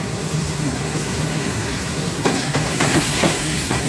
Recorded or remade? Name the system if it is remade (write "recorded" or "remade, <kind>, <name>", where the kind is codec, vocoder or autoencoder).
remade, codec, SNAC